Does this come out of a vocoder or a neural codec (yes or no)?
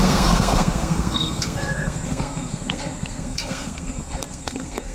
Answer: yes